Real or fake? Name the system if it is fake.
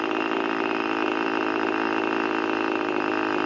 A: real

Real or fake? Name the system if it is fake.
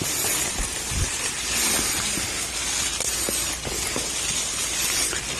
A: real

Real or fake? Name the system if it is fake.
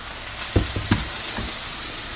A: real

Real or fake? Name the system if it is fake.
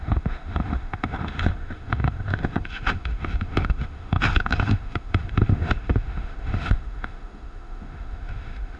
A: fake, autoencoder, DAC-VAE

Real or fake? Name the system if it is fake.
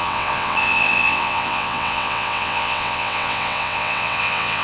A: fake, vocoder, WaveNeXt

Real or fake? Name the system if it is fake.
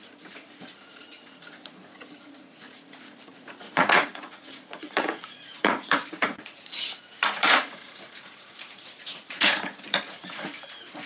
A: fake, vocoder, Vocos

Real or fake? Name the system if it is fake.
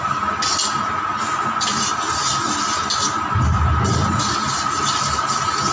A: real